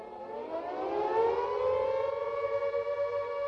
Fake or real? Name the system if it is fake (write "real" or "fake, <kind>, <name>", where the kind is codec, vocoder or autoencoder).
fake, vocoder, BigVGAN v2